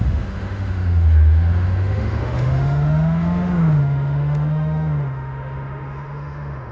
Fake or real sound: fake